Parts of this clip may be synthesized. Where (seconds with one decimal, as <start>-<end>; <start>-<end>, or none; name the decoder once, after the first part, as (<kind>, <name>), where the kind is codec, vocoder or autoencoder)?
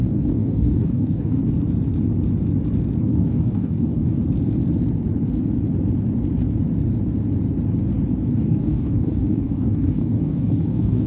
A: 0.0-1.4 (codec, DAC); 3.0-4.2; 8.3-11.1